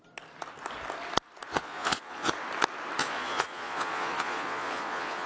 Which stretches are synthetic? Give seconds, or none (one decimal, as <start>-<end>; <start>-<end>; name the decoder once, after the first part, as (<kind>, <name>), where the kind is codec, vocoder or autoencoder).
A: 1.5-2.3 (vocoder, Vocos); 3.0-5.3